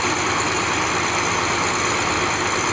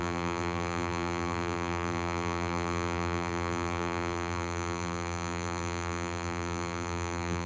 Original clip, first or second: first